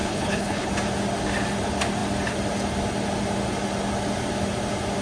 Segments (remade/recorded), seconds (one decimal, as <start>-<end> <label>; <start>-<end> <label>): 0.0-0.7 remade; 0.7-5.0 recorded